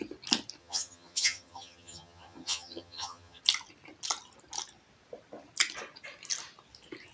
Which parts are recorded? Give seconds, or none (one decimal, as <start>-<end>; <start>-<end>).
0.0-0.6; 3.4-7.1